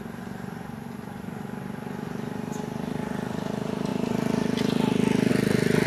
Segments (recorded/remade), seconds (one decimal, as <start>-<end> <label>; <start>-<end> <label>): 0.0-5.9 recorded